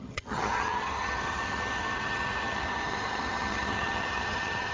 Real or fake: fake